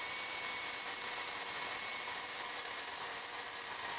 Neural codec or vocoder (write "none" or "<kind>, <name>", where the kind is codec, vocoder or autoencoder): vocoder, BigVGAN v2